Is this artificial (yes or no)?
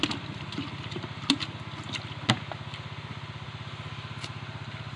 no